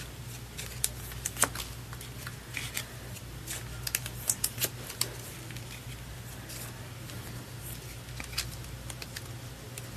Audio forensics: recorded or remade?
recorded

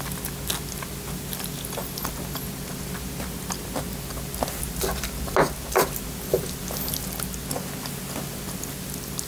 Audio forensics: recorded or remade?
recorded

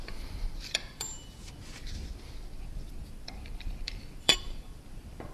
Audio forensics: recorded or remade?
remade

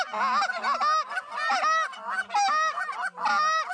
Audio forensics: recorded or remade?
recorded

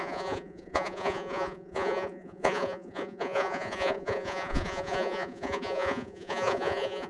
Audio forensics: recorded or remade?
remade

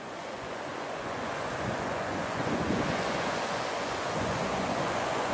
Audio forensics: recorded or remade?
remade